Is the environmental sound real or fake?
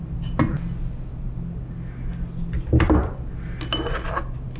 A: real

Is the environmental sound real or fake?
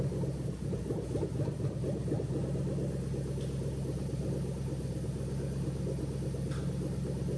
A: real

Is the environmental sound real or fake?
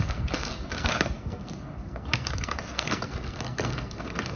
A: fake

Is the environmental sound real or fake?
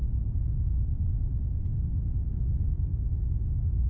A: real